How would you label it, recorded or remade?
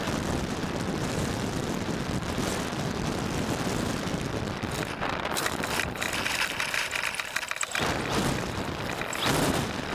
remade